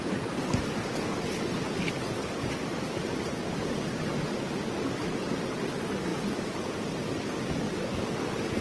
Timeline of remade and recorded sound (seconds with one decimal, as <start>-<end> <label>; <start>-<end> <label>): 0.0-8.6 recorded